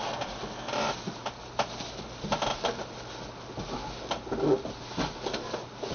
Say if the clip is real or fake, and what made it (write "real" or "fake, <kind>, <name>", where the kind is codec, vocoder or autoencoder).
real